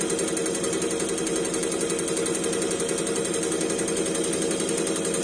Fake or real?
real